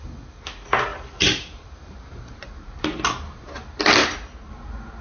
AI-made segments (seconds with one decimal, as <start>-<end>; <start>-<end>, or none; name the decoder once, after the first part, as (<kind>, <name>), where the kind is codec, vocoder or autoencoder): 0.9-2.8 (vocoder, BigVGAN v2); 4.0-4.5